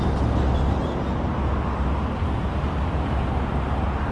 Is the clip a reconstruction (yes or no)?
no